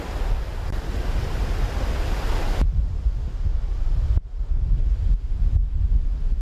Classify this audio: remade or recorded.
recorded